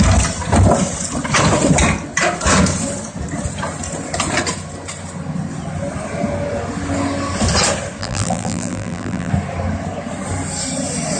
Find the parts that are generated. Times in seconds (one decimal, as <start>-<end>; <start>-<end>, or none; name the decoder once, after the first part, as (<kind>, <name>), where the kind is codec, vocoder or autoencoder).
8.0-9.3 (vocoder, BigVGAN v2)